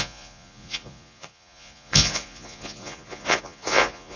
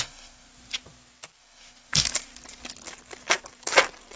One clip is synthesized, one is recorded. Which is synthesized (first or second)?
first